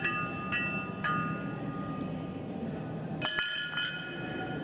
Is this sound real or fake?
real